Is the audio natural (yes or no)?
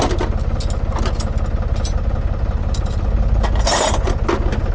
yes